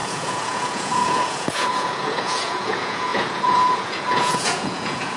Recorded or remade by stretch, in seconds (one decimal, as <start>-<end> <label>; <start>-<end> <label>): 0.0-5.2 remade